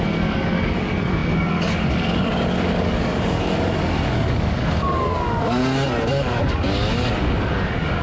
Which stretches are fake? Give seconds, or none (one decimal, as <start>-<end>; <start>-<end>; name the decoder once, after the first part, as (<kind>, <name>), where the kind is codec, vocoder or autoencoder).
0.0-5.6 (codec, DAC); 6.1-8.0